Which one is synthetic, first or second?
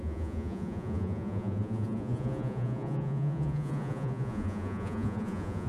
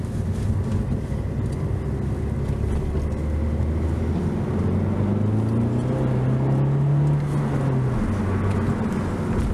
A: first